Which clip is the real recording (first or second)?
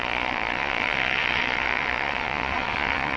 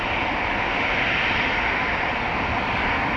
second